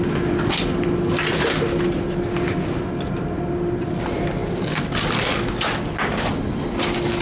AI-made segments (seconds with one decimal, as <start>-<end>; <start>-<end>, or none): none